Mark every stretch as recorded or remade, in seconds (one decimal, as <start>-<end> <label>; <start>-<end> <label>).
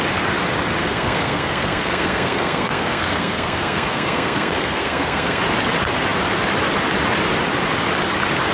0.0-0.8 recorded; 0.8-5.4 remade; 5.4-8.5 recorded